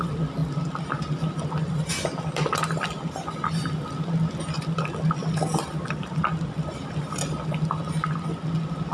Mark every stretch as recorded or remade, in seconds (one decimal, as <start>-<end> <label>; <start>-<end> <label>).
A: 0.0-8.9 recorded